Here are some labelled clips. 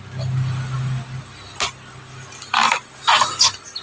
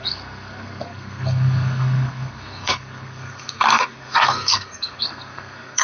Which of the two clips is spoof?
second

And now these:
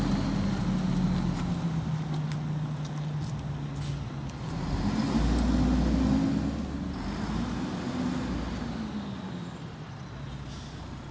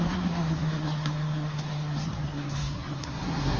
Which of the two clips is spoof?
second